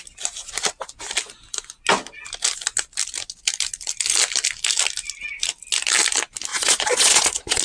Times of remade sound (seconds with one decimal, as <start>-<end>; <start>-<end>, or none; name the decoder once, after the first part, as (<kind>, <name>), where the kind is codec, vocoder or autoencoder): 6.5-7.6 (vocoder, Vocos)

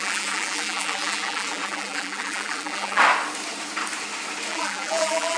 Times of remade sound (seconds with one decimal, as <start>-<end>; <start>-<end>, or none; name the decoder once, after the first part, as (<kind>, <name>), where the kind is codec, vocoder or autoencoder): 0.0-3.0 (vocoder, BigVGAN v2); 4.5-5.4

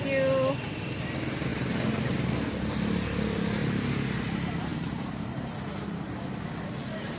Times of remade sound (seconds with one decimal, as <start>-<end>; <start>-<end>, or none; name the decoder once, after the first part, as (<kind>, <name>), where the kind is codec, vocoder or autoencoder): 1.5-2.0 (vocoder, BigVGAN v2); 4.7-6.4

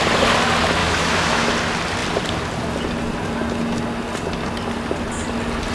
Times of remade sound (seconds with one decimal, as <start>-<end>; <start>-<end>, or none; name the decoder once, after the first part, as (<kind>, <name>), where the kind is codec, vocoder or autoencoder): 0.8-1.5 (autoencoder, DAC-VAE)

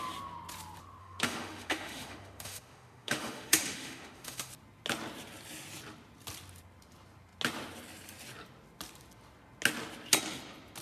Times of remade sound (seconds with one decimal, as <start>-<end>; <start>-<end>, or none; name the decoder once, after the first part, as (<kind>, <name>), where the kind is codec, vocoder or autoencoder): 1.0-4.5 (autoencoder, DAC-VAE)

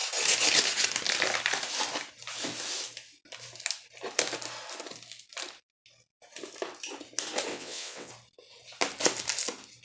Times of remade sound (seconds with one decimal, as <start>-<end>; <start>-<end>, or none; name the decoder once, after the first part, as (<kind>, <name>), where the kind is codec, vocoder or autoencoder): 7.5-8.1 (vocoder, WaveNeXt)